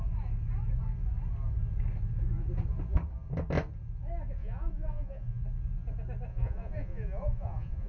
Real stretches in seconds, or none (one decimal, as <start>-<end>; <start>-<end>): 0.0-4.4; 5.4-6.3